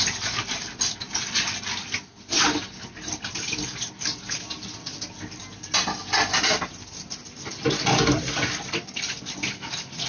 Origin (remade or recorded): recorded